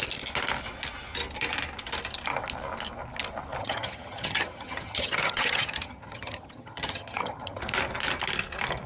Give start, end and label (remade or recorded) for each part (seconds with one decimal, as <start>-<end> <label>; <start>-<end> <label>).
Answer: 0.0-3.6 recorded; 3.6-7.6 remade; 7.6-8.9 recorded